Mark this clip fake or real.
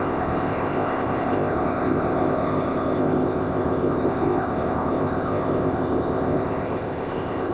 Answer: fake